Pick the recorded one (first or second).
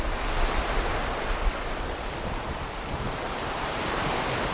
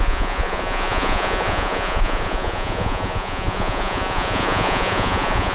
first